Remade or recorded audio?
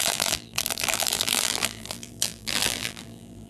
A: remade